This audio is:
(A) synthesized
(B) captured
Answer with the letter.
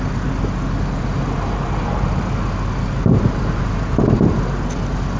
B